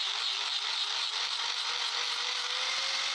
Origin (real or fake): real